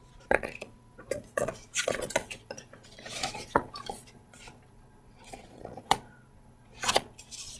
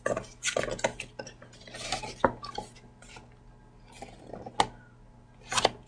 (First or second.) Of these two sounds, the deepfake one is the first